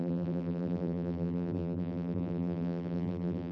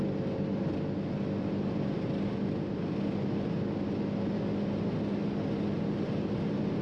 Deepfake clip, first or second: first